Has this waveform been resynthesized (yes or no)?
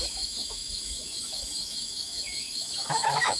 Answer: yes